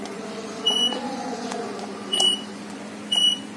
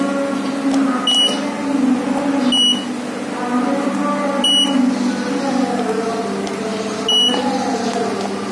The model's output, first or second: first